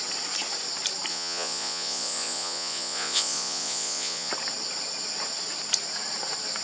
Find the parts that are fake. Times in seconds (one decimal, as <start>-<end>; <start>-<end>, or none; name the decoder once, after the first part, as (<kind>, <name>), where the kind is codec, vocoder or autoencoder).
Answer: 1.1-4.3 (vocoder, Vocos)